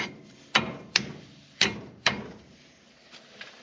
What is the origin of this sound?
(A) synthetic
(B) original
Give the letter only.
A